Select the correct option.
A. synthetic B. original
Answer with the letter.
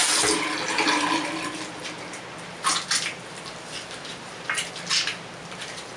B